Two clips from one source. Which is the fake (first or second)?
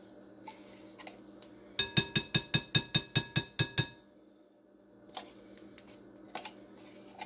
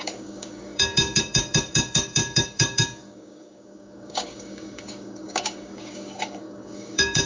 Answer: second